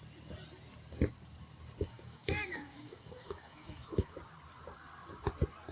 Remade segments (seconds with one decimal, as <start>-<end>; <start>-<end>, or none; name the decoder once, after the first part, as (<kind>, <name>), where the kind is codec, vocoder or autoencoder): 1.9-4.2 (autoencoder, DAC-VAE)